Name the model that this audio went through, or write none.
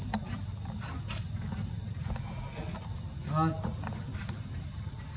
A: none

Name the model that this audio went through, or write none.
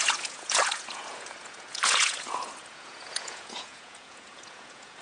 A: vocoder, Vocos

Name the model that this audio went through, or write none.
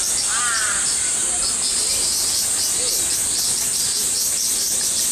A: none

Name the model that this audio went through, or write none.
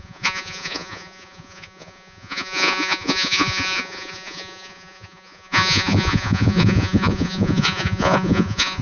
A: vocoder, Vocos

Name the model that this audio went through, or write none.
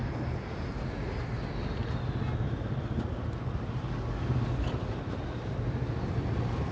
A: none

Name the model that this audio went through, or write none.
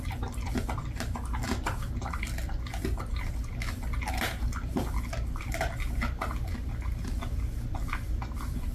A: none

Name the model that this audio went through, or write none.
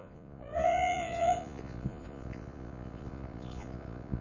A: vocoder, Vocos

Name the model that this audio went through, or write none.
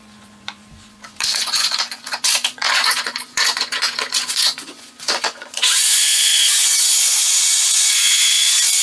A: vocoder, Vocos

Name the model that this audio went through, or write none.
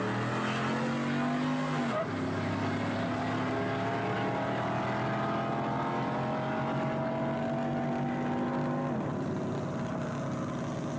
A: none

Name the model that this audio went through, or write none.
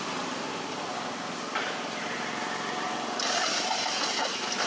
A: none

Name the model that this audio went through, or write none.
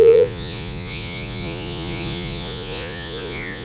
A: vocoder, Vocos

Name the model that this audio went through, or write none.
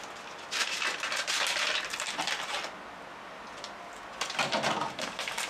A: none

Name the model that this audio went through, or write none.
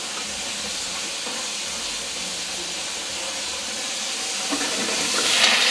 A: none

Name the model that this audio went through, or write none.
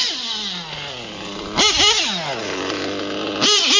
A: none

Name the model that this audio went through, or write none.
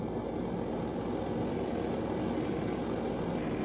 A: none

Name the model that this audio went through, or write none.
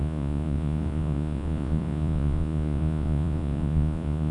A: vocoder, Vocos